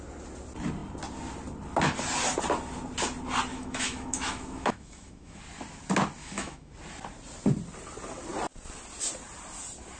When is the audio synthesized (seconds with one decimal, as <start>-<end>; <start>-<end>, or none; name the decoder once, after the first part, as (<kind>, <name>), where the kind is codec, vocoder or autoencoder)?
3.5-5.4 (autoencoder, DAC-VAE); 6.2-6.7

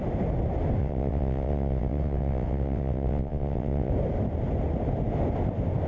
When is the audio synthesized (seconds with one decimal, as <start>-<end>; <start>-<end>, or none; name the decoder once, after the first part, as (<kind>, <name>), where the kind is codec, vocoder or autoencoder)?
0.8-3.9 (vocoder, WaveNeXt)

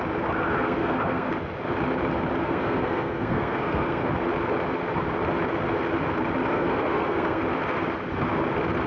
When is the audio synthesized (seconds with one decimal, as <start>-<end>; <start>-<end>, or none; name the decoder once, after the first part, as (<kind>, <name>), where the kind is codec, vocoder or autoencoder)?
0.5-1.3 (codec, SNAC); 2.4-4.1; 6.5-7.4

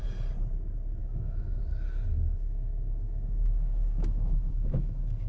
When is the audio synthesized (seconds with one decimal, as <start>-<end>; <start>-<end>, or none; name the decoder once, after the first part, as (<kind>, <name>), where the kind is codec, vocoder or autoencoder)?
1.0-1.6 (autoencoder, DAC-VAE); 2.1-5.3

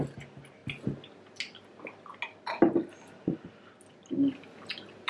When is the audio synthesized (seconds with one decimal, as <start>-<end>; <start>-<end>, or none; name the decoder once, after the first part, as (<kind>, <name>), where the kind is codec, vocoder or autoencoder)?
none

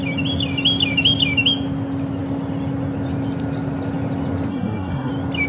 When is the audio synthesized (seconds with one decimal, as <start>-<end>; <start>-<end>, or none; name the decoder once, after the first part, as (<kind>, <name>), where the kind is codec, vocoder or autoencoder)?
4.5-5.1 (codec, SNAC)

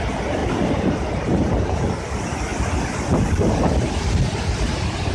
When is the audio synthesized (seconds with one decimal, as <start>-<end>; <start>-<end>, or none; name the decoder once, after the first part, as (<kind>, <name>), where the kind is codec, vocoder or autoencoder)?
none

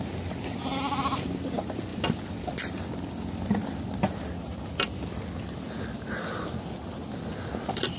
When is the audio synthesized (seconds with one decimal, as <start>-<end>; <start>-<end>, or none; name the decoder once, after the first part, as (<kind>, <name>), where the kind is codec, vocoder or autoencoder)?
none